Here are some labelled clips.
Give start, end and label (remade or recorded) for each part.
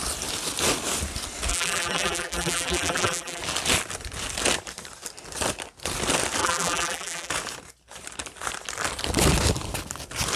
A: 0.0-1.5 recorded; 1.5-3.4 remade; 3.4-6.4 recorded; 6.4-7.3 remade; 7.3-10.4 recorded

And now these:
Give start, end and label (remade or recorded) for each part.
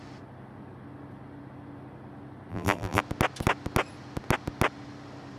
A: 0.0-2.5 recorded; 2.5-3.0 remade; 3.0-5.4 recorded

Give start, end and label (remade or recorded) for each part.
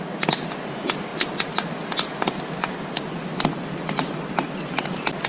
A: 0.0-5.3 recorded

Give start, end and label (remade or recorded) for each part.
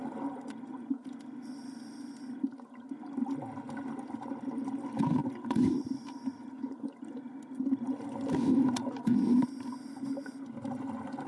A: 0.0-2.1 remade; 2.1-5.2 recorded; 5.2-7.1 remade; 7.1-11.3 recorded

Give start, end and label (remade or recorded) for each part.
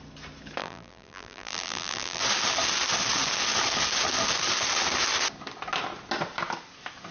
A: 0.0-0.6 recorded; 0.6-2.2 remade; 2.2-7.1 recorded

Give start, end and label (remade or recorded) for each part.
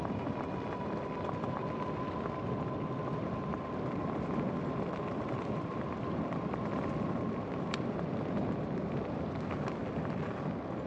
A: 0.0-10.9 recorded